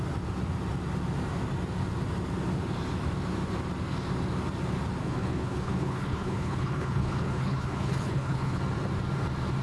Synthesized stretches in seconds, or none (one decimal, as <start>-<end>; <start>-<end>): 5.0-8.6

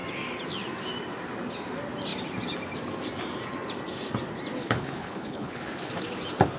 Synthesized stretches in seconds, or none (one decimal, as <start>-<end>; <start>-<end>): 4.6-5.9

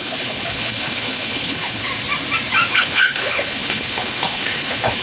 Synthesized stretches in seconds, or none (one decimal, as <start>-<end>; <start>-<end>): 0.0-1.9; 2.7-5.0

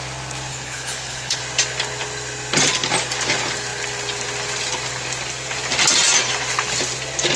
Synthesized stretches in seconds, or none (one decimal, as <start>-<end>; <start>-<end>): 0.5-1.4

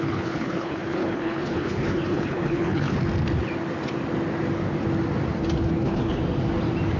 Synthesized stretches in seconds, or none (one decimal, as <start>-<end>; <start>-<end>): 0.0-3.0; 5.7-6.2

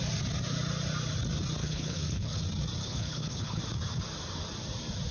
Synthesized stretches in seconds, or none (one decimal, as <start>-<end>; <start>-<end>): 1.6-2.4; 2.8-3.6

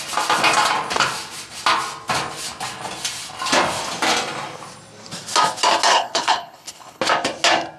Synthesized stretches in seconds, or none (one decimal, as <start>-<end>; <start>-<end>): 5.9-7.0

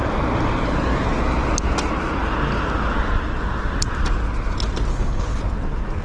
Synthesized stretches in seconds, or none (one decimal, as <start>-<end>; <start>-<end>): 4.9-5.4